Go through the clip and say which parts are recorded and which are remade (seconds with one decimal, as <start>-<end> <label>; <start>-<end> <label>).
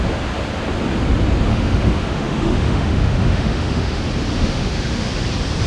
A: 0.0-1.5 recorded; 1.5-4.0 remade; 4.0-4.4 recorded; 4.4-5.1 remade; 5.1-5.7 recorded